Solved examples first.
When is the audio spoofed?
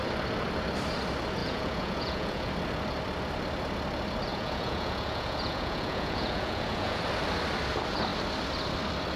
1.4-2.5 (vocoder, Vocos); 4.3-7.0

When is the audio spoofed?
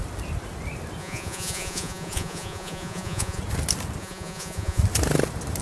1.0-3.4 (vocoder, Vocos); 4.0-4.8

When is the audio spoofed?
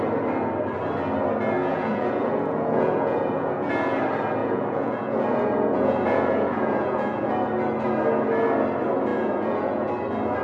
1.7-3.7 (vocoder, Vocos); 4.4-7.3; 9.1-9.9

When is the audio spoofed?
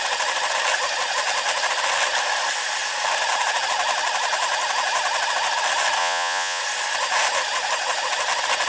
6.0-6.6 (vocoder, Vocos)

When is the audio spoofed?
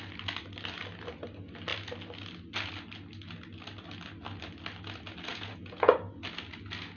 5.3-5.9 (vocoder, Vocos)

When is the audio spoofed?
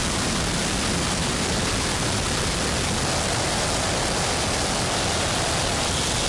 none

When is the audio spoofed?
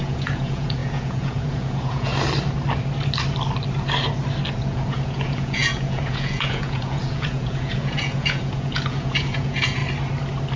0.0-2.1 (vocoder, Vocos); 4.6-9.8